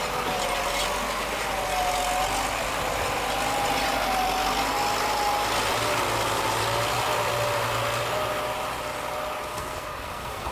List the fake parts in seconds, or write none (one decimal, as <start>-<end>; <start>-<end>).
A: 9.5-10.5

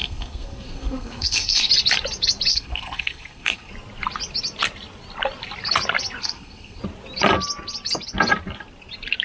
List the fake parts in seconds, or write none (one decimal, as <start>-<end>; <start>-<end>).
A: 0.0-1.7; 2.5-3.7; 6.2-6.8

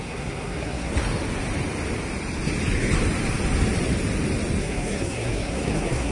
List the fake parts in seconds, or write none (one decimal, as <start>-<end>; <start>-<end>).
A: 0.0-0.9; 4.6-6.1

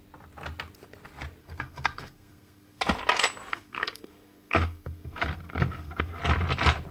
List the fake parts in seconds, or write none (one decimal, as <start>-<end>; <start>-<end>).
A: 1.4-2.8; 3.5-6.2

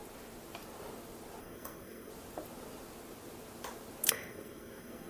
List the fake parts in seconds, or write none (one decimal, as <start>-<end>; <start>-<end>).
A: 1.4-2.1; 4.1-5.1

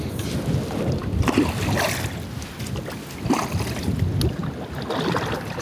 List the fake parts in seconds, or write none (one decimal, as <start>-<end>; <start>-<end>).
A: none

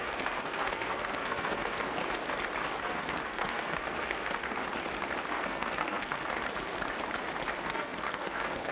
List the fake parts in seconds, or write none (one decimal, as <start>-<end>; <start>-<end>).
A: 0.0-2.0; 2.8-4.6; 5.3-6.4; 7.6-8.7

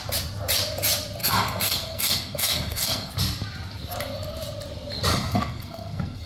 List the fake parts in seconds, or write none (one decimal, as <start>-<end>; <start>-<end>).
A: 1.2-3.1; 5.1-6.3